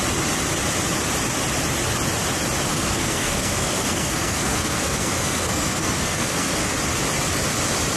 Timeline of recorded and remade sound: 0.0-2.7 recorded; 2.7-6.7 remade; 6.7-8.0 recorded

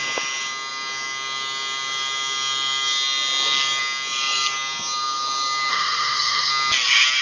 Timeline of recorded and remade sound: 0.0-5.7 recorded; 5.7-6.5 remade; 6.5-7.2 recorded

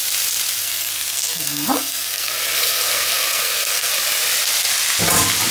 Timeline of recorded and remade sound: 0.0-0.6 recorded; 0.6-3.9 remade; 3.9-5.5 recorded

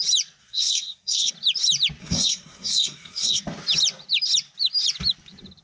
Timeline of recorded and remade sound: 0.0-0.4 recorded; 0.4-1.3 remade; 1.3-2.0 recorded; 2.0-3.4 remade; 3.4-5.6 recorded

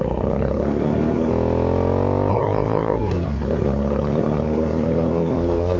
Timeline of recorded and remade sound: 0.0-1.3 remade; 1.3-2.3 recorded; 2.3-5.8 remade